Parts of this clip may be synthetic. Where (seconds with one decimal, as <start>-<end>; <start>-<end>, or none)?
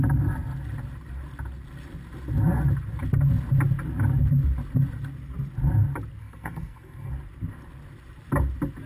6.2-7.1